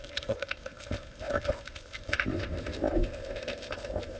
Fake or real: fake